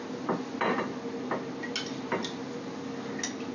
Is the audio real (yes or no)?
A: yes